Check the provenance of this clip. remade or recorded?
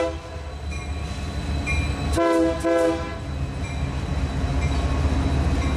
recorded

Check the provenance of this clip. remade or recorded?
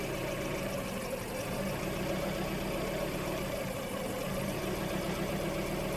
recorded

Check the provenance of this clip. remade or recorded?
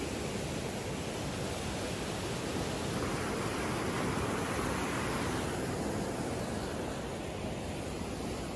recorded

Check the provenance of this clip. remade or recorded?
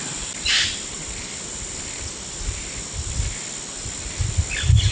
recorded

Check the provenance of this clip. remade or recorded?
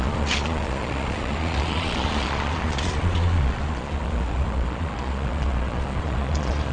remade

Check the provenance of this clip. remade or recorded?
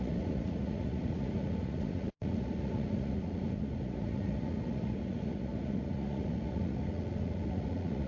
remade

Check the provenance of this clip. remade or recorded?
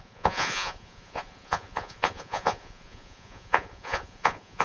remade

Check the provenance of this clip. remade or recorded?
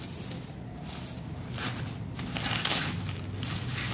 recorded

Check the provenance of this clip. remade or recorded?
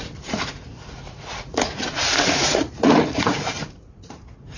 remade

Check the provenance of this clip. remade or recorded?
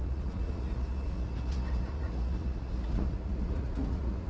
remade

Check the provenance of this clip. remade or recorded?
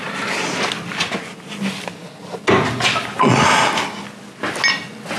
recorded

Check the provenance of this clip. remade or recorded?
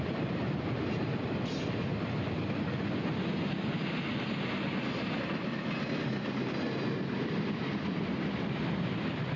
recorded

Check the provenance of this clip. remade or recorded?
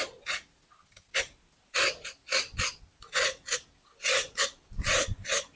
recorded